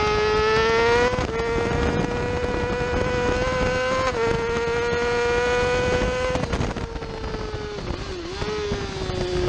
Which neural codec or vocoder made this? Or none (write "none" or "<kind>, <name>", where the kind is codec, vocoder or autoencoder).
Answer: none